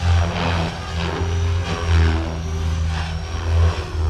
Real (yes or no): yes